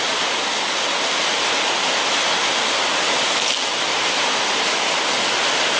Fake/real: real